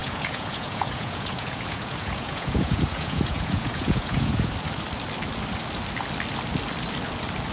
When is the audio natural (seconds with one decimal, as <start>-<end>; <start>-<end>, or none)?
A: 4.5-7.5